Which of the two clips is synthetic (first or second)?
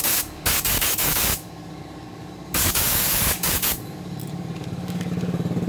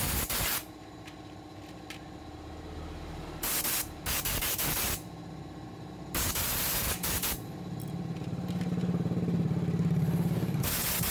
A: first